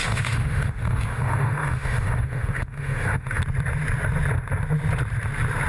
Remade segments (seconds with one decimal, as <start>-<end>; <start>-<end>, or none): 0.0-3.4